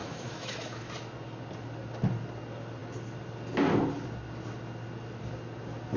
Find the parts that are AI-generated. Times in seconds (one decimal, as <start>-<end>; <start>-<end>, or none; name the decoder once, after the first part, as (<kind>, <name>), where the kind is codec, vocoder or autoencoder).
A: 0.0-0.9 (autoencoder, DAC-VAE)